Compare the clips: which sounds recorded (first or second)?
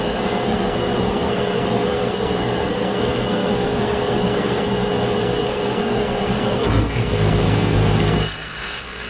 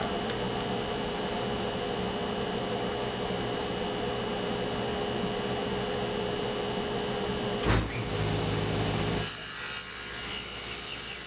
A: second